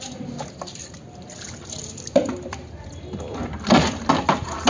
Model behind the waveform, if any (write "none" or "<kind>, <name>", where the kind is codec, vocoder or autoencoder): none